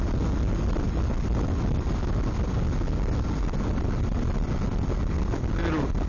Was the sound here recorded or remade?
recorded